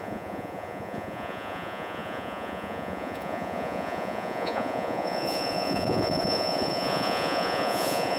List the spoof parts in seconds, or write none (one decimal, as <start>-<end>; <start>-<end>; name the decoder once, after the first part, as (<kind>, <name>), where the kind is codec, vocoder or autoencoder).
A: 0.0-8.2 (vocoder, Vocos)